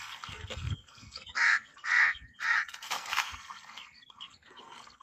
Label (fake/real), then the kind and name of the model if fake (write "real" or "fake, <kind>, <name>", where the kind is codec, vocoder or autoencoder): fake, codec, SNAC